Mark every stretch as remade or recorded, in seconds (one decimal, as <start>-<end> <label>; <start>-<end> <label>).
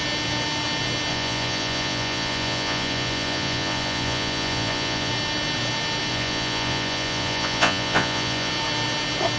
0.0-1.1 recorded; 1.1-5.1 remade; 5.1-6.1 recorded; 6.1-8.5 remade; 8.5-9.4 recorded